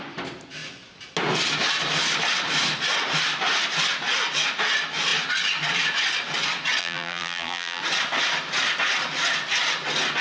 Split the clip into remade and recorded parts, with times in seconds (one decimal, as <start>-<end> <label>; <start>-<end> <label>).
0.0-6.8 recorded; 6.8-7.8 remade; 7.8-10.2 recorded